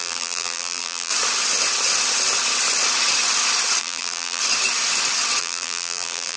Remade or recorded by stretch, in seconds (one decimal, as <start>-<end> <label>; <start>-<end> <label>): 0.0-1.1 remade; 1.1-3.8 recorded; 3.8-4.4 remade; 4.4-5.4 recorded; 5.4-6.4 remade